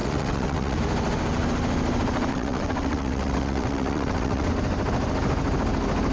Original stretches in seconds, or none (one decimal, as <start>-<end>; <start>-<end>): 0.8-2.3; 4.5-6.1